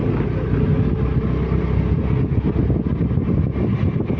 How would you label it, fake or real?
real